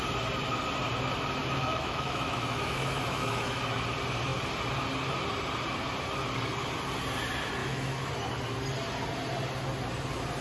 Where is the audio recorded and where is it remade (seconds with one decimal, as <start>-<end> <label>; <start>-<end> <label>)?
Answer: 0.0-1.4 recorded; 1.4-3.6 remade; 3.6-7.6 recorded; 7.6-8.1 remade; 8.1-10.4 recorded